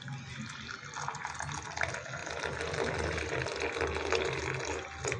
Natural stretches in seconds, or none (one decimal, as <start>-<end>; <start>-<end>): 0.0-5.2